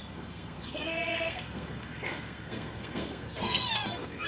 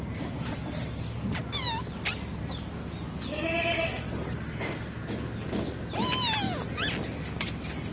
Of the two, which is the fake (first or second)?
first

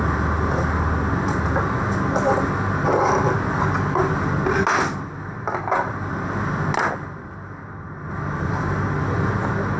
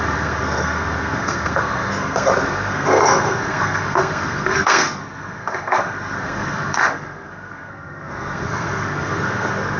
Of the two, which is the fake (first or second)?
second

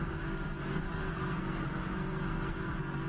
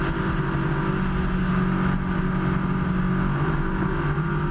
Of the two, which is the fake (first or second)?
first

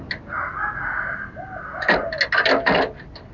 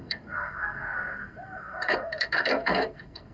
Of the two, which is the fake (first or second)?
second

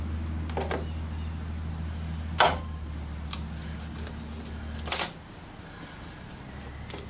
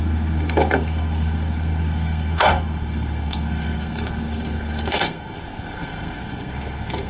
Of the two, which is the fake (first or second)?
second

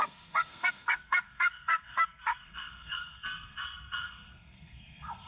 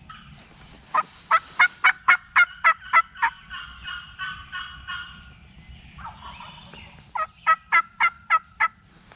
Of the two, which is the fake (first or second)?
first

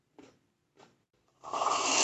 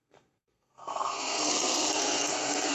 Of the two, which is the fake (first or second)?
second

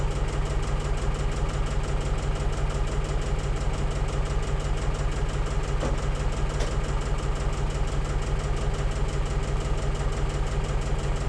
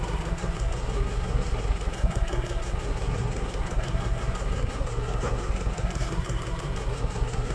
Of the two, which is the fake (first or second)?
second